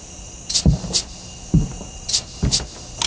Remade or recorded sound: recorded